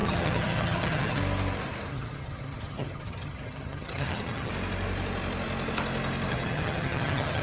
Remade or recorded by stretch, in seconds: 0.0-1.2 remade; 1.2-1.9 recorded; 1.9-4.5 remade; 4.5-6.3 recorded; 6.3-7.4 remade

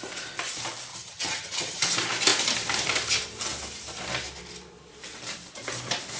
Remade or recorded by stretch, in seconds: 0.0-0.9 recorded; 0.9-1.8 remade; 1.8-6.2 recorded

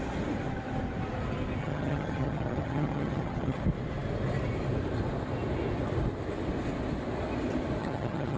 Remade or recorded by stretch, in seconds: 0.0-1.6 recorded; 1.6-3.6 remade; 3.6-7.8 recorded; 7.8-8.4 remade

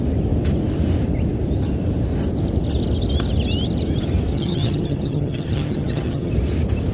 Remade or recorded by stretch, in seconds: 0.0-4.3 recorded; 4.3-6.3 remade; 6.3-6.9 recorded

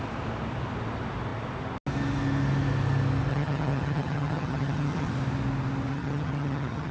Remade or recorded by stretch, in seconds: 0.0-3.3 recorded; 3.3-5.1 remade; 5.1-5.9 recorded; 5.9-6.9 remade

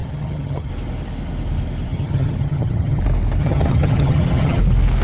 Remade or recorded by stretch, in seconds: 0.0-0.7 remade; 0.7-1.9 recorded; 1.9-3.0 remade; 3.0-3.4 recorded; 3.4-4.6 remade; 4.6-5.0 recorded

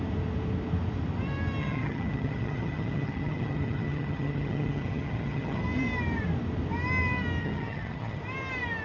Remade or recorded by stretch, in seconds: 0.0-1.6 recorded; 1.6-5.6 remade; 5.6-7.4 recorded; 7.4-8.2 remade; 8.2-8.8 recorded